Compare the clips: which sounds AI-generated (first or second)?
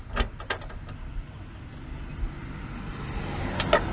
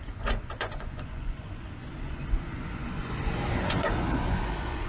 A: second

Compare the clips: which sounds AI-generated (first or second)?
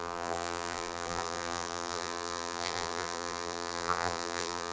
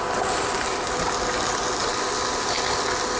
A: first